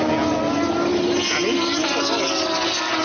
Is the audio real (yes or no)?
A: yes